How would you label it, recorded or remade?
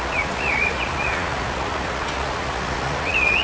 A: remade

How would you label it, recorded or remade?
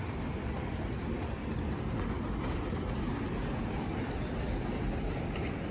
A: recorded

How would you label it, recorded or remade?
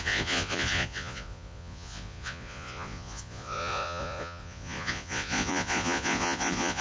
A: remade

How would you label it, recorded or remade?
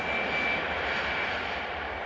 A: recorded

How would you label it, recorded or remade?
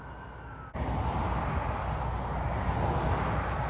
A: recorded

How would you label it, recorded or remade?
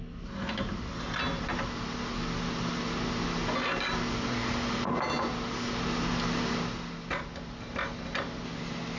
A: recorded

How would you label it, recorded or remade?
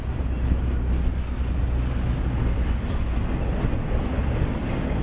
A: recorded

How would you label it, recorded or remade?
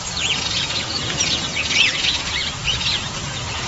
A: remade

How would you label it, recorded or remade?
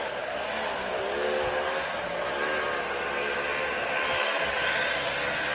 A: recorded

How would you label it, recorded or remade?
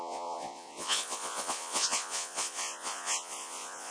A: remade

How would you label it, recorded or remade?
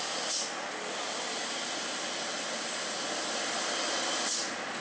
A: recorded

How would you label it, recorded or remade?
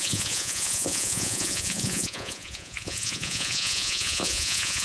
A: remade